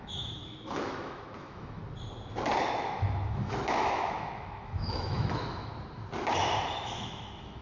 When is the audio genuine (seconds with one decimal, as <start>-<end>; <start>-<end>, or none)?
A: 1.8-2.6; 5.7-6.7